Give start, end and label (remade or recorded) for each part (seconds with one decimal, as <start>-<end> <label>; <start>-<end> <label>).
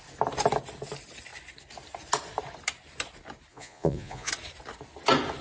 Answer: 0.0-3.5 recorded; 3.5-4.3 remade; 4.3-5.4 recorded